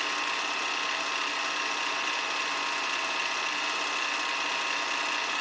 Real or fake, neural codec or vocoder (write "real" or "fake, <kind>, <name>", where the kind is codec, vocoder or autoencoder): real